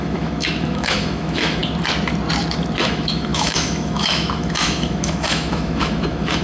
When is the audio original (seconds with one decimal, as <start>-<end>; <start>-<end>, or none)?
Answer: 1.6-2.8